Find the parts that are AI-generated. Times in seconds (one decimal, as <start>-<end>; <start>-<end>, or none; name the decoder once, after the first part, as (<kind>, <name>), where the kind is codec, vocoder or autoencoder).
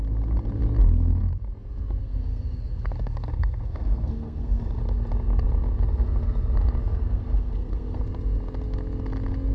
2.0-4.8 (codec, SNAC); 6.9-8.0